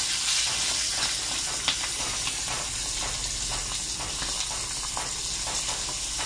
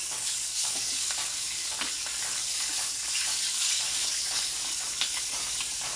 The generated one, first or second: second